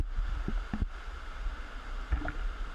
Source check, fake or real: real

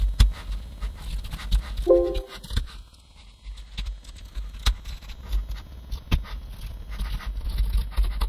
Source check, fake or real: real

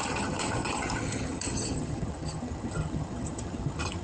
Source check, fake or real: fake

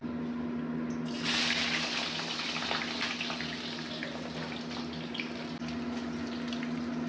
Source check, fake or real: real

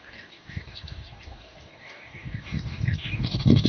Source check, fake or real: fake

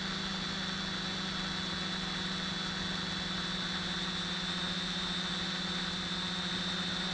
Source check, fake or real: real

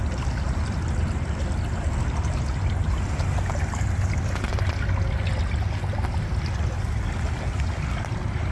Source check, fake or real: real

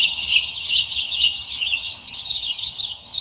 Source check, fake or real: fake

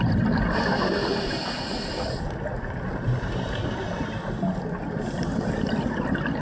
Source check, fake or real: real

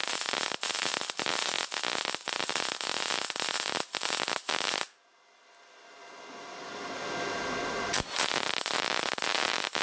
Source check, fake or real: real